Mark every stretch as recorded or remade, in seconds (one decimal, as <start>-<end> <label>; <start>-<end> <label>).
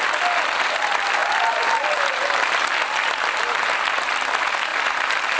0.0-5.4 recorded